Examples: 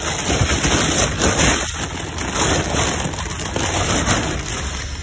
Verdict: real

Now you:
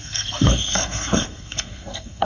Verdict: fake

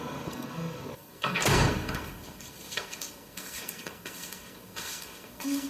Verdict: fake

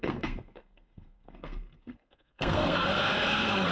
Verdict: fake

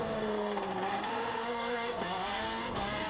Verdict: fake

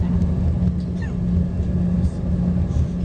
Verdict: real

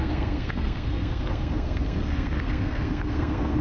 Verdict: fake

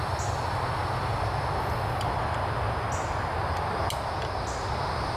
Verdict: real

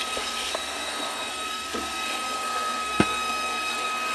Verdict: fake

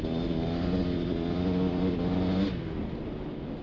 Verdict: real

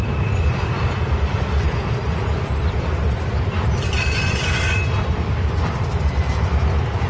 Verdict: real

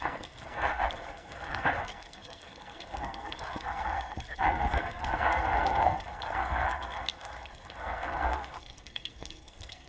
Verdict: fake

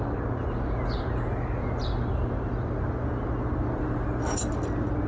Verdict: real